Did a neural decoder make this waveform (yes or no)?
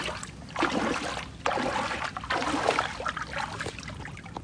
no